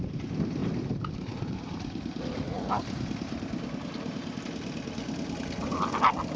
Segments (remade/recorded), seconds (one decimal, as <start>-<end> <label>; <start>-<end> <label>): 0.0-0.6 recorded; 0.6-4.4 remade; 4.4-6.4 recorded